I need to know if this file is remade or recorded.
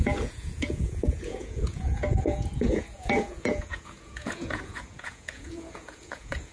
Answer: remade